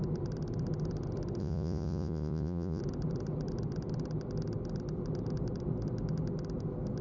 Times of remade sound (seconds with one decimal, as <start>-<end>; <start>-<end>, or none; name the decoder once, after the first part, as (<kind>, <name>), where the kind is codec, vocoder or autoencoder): 1.4-2.8 (vocoder, Vocos)